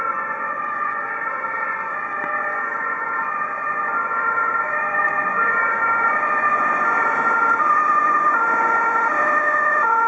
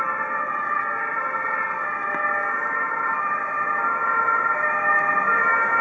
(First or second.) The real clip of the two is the second